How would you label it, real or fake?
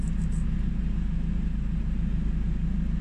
real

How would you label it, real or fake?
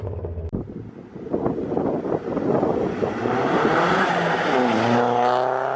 real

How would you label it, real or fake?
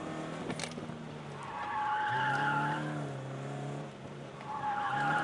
real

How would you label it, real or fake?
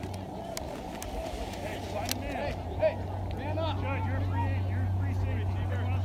real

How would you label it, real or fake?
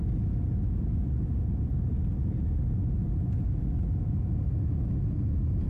real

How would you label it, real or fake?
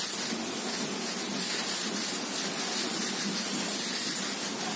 real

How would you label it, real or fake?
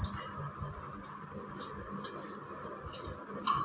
real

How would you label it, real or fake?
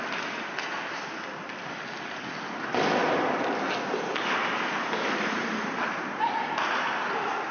real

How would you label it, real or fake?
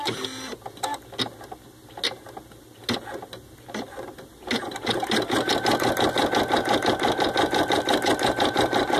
real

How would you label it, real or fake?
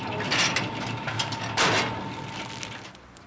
real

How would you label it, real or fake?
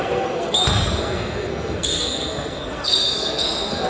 fake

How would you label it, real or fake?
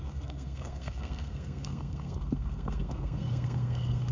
fake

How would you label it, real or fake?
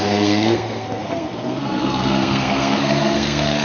fake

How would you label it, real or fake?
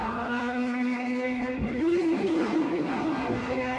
fake